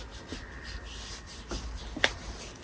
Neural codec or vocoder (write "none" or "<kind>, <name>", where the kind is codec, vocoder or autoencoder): none